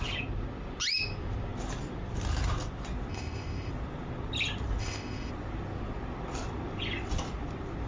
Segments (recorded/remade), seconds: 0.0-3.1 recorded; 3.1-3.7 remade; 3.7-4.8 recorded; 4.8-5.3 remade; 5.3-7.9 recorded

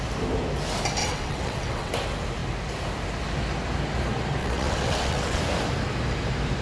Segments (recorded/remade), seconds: 0.0-1.0 recorded; 1.0-1.9 remade; 1.9-4.4 recorded; 4.4-5.4 remade; 5.4-6.6 recorded

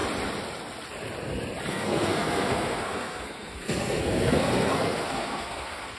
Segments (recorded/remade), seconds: 0.0-1.7 recorded; 1.7-6.0 remade